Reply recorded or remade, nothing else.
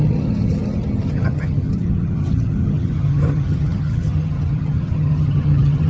remade